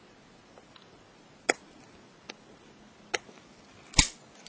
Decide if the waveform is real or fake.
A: real